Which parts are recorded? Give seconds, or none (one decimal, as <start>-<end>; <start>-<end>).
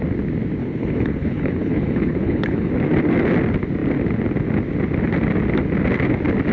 0.0-0.6; 2.7-6.5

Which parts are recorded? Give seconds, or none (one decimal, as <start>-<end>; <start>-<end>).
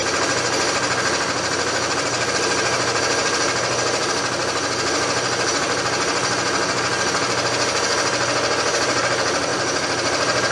0.0-10.5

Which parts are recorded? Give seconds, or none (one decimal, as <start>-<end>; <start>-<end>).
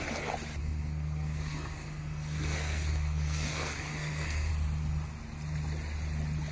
0.0-0.6; 4.5-6.5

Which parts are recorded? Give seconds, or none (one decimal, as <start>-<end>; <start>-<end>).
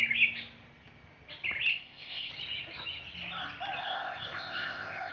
0.0-1.7; 2.3-3.8